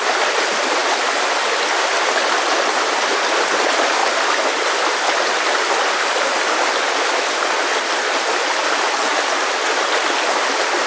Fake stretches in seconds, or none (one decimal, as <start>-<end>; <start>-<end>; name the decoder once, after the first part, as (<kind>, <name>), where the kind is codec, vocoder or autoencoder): 0.0-0.8 (vocoder, BigVGAN v2); 1.8-4.0; 8.4-10.9